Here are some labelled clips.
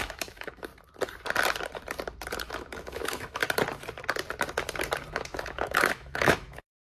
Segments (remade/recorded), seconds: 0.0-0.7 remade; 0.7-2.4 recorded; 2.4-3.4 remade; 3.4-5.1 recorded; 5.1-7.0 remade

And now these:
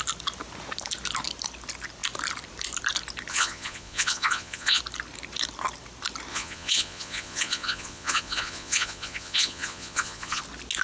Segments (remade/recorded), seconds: 0.0-3.3 recorded; 3.3-4.8 remade; 4.8-6.3 recorded; 6.3-10.4 remade; 10.4-10.8 recorded

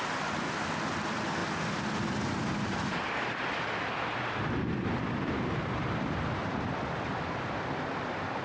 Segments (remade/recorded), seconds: 0.0-1.4 recorded; 1.4-5.3 remade; 5.3-6.4 recorded; 6.4-8.4 remade

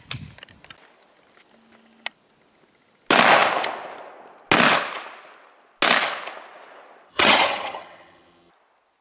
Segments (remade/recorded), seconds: 0.0-7.1 recorded; 7.1-8.5 remade; 8.5-9.0 recorded

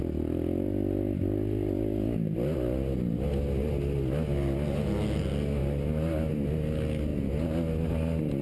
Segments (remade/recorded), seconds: 0.0-8.4 recorded

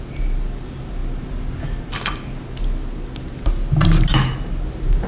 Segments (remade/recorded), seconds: 0.0-5.1 recorded

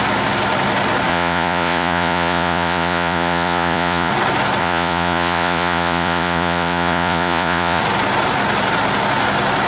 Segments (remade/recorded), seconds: 0.0-1.1 recorded; 1.1-4.1 remade; 4.1-4.6 recorded; 4.6-7.8 remade; 7.8-9.7 recorded